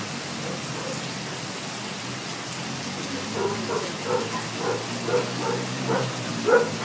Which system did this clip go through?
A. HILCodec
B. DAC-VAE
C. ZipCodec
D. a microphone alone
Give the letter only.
D